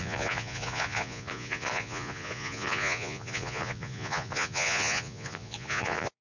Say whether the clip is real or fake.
fake